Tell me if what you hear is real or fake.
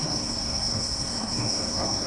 fake